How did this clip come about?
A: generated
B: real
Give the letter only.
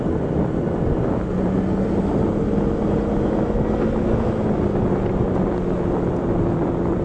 B